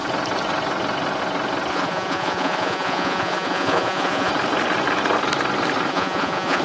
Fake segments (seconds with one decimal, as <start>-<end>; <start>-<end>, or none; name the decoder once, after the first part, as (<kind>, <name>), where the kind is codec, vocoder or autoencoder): 1.7-4.3 (vocoder, Vocos); 5.9-6.6